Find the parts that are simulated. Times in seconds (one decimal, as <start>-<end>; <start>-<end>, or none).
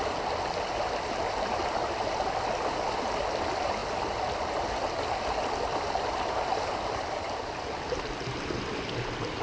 none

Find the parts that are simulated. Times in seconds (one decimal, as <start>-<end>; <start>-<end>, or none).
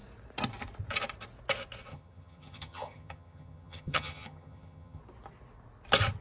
1.9-5.0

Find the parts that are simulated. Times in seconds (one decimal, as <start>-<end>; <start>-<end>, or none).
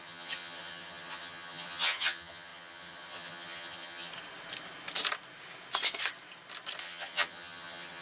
0.0-4.1; 6.8-8.0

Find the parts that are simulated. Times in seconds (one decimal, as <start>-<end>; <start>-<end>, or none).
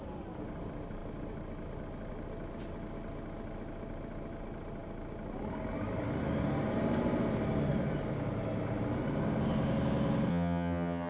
10.3-11.1